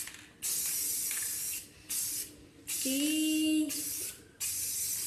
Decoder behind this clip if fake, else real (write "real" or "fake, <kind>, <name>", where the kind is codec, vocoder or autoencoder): real